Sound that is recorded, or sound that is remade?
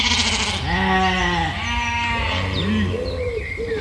recorded